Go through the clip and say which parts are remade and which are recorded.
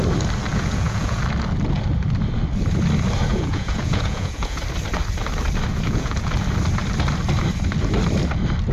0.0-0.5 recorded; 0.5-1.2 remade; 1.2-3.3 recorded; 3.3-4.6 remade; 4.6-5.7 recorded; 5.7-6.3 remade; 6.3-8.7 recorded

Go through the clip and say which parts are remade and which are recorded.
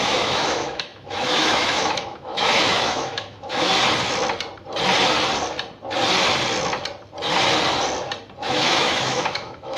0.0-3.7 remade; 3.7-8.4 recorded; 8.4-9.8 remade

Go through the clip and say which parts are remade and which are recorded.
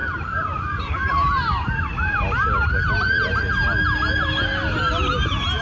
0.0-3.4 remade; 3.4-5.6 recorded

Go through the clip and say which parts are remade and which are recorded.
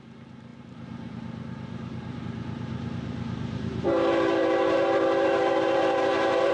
0.0-6.5 remade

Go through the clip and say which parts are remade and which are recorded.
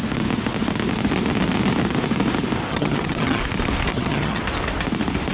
0.0-2.7 recorded; 2.7-3.4 remade; 3.4-3.9 recorded; 3.9-4.4 remade; 4.4-5.3 recorded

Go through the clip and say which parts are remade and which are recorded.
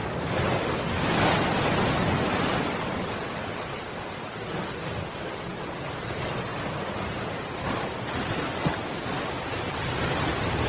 0.0-10.7 recorded